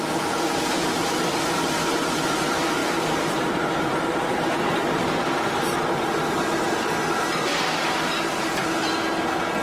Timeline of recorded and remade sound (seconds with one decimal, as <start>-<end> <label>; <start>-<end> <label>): 0.0-8.3 remade; 8.3-8.9 recorded; 8.9-9.6 remade